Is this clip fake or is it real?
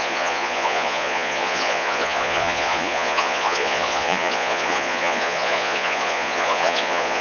fake